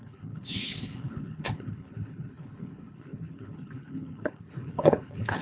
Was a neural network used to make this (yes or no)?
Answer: yes